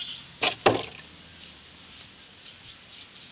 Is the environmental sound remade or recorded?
recorded